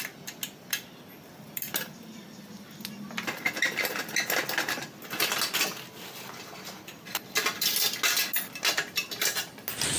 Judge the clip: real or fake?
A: real